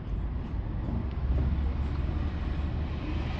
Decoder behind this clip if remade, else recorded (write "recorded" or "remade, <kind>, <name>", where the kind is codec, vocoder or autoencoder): recorded